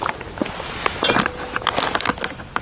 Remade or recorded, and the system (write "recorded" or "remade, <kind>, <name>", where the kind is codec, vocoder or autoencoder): recorded